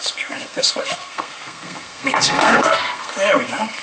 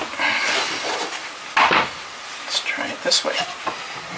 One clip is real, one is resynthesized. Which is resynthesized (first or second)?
first